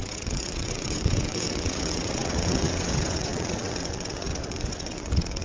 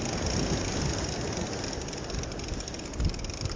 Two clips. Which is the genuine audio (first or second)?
second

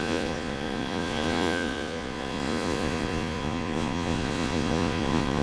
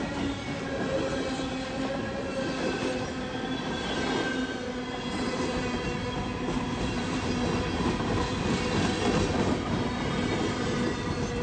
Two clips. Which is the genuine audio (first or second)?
second